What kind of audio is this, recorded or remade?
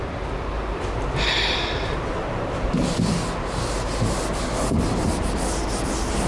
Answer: recorded